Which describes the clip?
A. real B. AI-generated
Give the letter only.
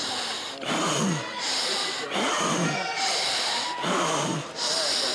A